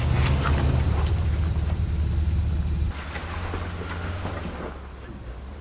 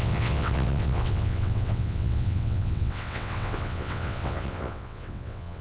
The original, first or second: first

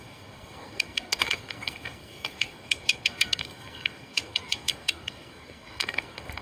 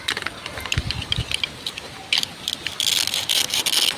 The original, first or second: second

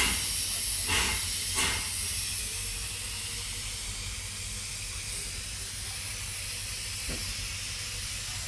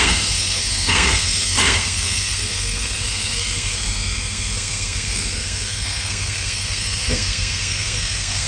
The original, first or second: first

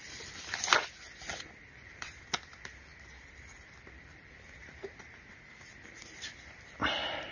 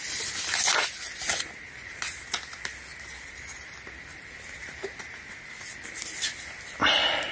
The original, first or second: second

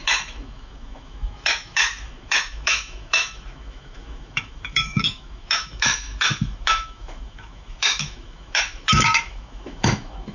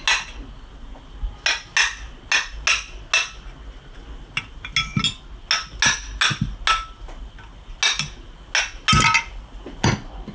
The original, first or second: second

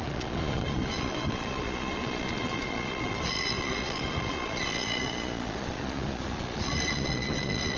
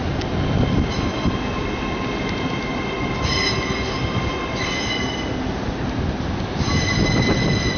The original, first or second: second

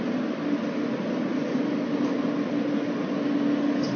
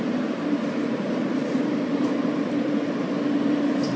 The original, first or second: first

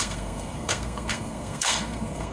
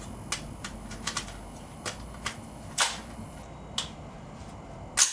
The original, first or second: second